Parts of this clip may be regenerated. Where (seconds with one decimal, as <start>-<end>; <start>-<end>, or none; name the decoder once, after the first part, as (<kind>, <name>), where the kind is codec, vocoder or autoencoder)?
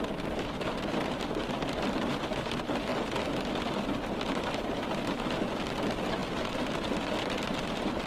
none